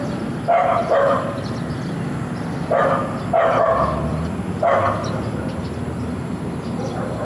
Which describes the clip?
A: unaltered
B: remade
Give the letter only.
A